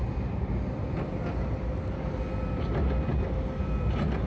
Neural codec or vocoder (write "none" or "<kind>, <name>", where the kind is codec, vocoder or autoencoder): none